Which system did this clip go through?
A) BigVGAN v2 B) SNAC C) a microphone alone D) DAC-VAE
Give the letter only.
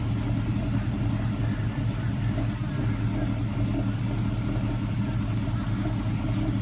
C